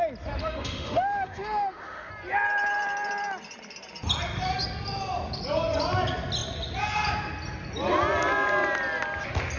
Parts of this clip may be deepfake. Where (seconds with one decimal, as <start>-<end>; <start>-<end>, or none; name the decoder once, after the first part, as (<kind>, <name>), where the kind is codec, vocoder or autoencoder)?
0.4-2.1 (autoencoder, DAC-VAE)